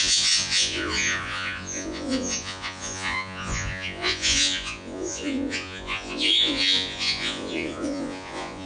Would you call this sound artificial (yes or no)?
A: yes